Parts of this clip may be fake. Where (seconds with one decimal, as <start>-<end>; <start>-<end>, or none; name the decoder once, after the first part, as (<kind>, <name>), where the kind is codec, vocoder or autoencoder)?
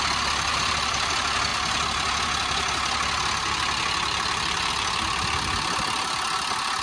0.5-1.1 (vocoder, BigVGAN v2)